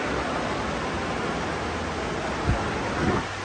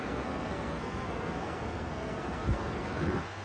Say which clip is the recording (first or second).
first